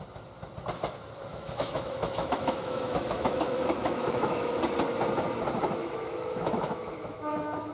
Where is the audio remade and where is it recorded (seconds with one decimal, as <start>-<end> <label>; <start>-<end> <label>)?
0.0-1.3 recorded; 1.3-4.6 remade; 4.6-5.8 recorded; 5.8-7.7 remade